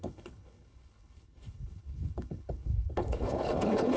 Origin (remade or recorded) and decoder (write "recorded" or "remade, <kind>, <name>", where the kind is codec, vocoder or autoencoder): remade, codec, HILCodec